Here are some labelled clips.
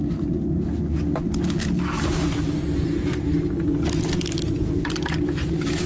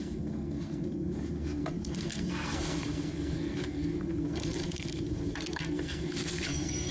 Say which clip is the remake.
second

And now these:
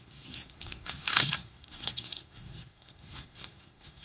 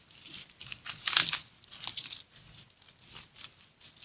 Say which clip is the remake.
first